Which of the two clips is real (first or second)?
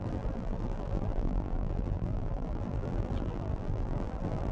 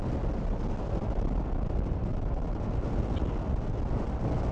second